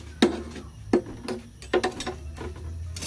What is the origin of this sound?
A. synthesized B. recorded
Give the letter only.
B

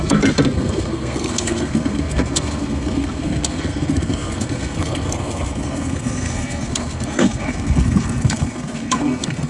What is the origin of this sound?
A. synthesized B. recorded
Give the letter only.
A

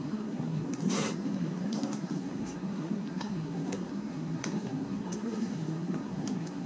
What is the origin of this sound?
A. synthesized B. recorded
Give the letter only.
A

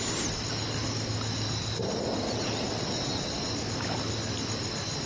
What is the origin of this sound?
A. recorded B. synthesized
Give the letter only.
A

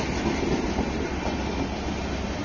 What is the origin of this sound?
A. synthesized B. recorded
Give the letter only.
B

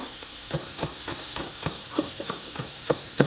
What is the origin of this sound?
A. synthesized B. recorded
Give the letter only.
A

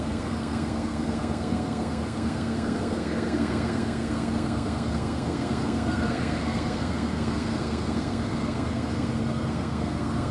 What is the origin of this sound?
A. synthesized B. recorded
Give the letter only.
A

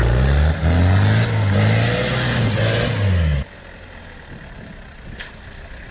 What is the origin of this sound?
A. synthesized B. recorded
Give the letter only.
B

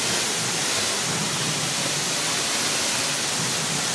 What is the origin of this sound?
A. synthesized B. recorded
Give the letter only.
B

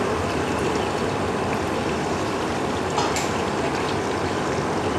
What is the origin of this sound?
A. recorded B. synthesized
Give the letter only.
A